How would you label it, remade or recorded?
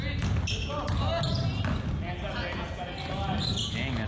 recorded